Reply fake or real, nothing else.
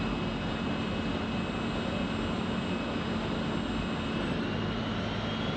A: real